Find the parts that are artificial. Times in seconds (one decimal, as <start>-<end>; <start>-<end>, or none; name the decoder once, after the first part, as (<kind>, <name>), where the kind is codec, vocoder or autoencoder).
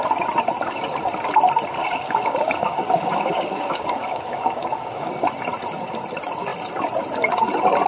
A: 1.8-5.1 (codec, DAC)